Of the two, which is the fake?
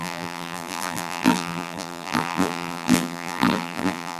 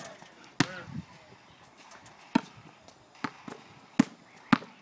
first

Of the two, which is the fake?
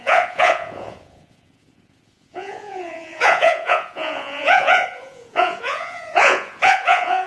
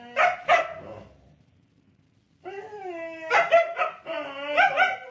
first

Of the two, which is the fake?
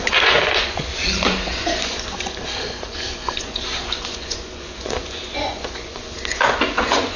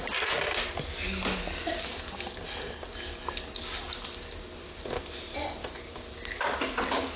first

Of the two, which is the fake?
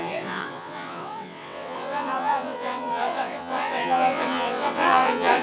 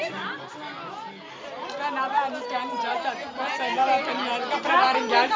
first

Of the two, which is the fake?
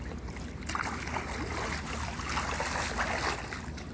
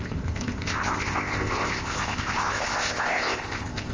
second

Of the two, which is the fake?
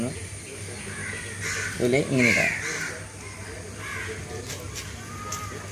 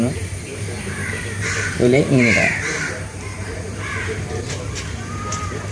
second